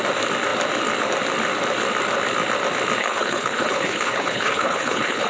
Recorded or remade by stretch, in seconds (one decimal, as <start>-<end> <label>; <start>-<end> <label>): 0.0-3.0 recorded; 3.0-5.3 remade